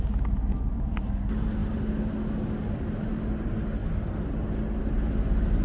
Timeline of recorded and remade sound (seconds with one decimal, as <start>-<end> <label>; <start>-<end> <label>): 0.0-5.6 recorded